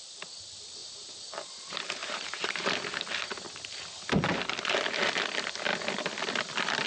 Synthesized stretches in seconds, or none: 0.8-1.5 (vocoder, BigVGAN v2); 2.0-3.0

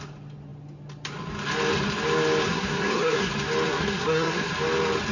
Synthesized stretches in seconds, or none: 2.5-3.3 (codec, SNAC); 3.7-4.5

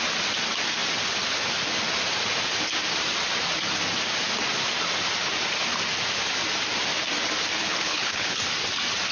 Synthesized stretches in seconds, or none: 7.6-8.4 (codec, HILCodec)

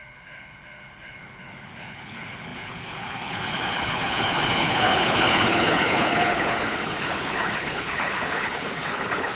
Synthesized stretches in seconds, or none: 0.0-9.4 (codec, HILCodec)

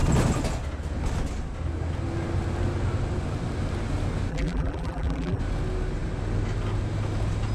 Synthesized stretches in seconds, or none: 4.3-5.4 (vocoder, BigVGAN v2)

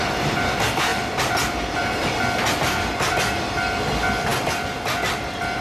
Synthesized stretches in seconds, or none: none

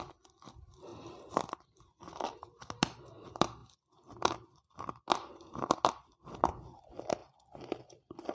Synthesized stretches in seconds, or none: none